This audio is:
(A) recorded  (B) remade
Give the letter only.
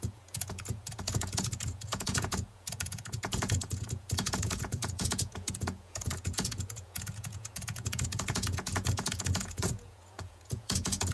B